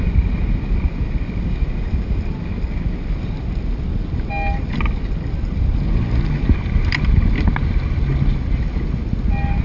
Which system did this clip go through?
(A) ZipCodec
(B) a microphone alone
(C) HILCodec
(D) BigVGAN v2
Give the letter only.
B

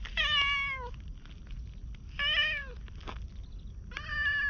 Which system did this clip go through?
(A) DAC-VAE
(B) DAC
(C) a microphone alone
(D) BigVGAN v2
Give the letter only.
C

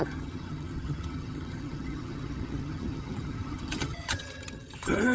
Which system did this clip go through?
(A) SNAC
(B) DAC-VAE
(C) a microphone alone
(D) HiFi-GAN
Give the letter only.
D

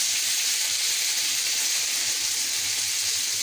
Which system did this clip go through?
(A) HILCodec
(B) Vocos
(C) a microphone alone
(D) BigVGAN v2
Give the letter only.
D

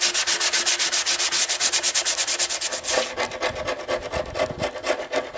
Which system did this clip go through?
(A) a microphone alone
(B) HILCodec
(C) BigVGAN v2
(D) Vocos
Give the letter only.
A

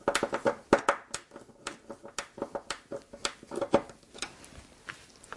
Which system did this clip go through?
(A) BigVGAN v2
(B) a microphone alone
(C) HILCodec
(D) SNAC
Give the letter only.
B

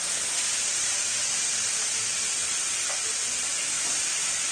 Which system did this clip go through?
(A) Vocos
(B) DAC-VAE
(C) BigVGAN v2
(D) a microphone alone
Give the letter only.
D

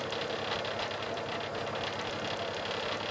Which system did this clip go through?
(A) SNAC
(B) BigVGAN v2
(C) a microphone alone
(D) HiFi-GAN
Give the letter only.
C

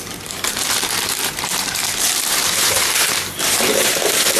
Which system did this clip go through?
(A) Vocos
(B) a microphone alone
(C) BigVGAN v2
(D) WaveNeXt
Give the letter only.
C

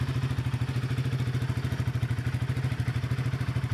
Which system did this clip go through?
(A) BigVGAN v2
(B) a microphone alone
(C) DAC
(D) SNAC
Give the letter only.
B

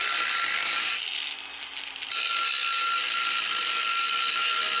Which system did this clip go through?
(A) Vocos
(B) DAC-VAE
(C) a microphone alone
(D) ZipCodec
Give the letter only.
C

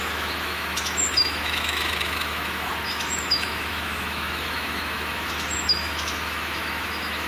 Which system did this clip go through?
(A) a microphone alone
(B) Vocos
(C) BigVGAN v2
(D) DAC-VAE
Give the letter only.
D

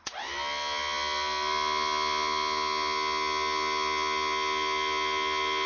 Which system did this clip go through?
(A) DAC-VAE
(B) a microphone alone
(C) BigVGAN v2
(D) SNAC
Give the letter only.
B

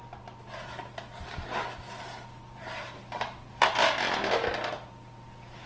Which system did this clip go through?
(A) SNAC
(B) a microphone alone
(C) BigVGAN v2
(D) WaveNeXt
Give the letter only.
B